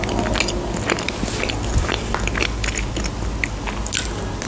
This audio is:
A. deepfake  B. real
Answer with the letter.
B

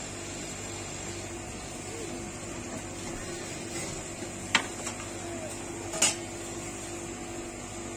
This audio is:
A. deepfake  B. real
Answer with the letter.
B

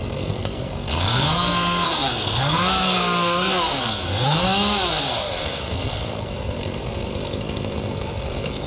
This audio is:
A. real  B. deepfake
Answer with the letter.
B